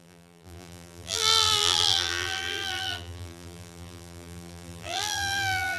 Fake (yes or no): yes